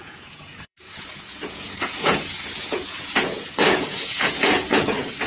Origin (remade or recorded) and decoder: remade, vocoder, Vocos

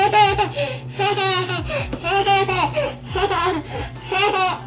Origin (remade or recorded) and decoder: recorded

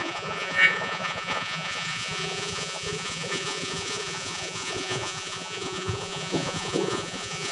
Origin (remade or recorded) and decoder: remade, vocoder, Vocos